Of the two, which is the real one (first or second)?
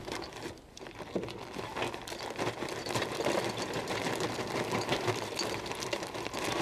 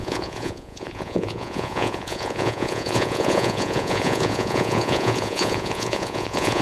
first